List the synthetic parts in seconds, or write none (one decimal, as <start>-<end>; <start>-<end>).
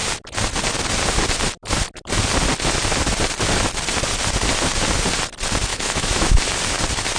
5.7-6.4